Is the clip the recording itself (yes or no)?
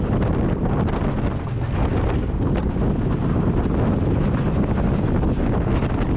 yes